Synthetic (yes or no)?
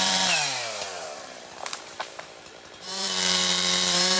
yes